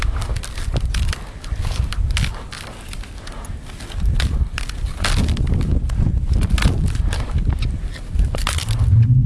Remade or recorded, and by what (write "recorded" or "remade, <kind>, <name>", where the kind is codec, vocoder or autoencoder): recorded